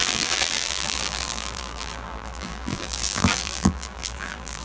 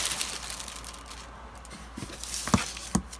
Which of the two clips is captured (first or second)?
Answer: second